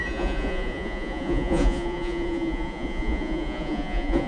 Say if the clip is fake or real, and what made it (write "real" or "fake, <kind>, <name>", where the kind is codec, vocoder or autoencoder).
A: fake, vocoder, Vocos